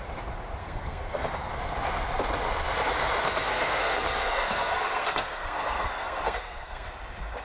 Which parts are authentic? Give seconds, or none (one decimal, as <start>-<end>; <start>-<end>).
0.0-0.6; 1.5-3.5; 6.9-7.4